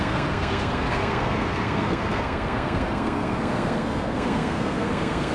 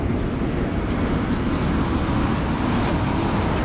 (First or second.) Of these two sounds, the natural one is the second